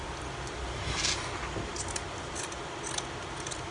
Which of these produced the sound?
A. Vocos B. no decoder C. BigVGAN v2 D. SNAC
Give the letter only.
B